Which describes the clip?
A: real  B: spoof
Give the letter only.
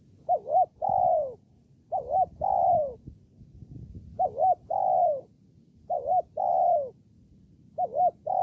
A